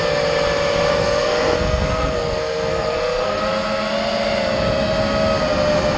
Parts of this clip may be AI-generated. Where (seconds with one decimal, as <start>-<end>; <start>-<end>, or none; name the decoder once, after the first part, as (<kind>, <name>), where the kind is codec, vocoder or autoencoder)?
0.9-3.4 (codec, SNAC)